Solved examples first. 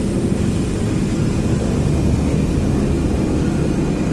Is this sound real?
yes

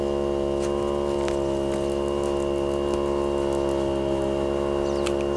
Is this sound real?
yes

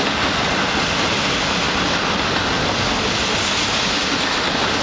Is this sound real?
yes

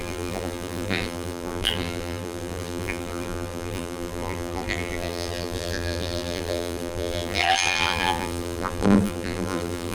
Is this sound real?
no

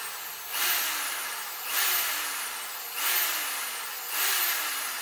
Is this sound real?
yes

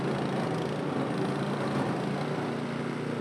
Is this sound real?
yes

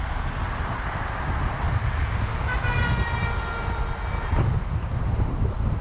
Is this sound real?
yes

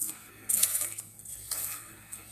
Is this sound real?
no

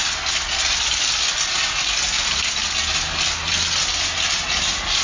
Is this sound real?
yes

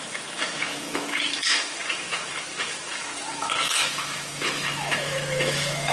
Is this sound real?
no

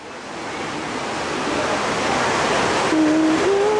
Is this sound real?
yes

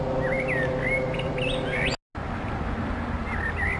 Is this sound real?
yes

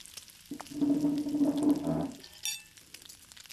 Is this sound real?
yes